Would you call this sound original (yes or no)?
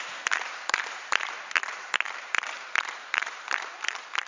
no